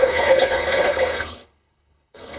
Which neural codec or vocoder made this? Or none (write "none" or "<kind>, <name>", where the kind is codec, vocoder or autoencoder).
codec, HILCodec